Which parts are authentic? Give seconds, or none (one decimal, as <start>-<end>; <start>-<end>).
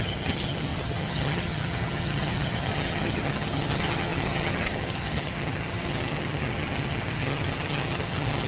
none